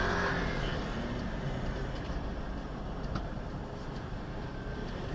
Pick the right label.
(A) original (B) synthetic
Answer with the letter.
A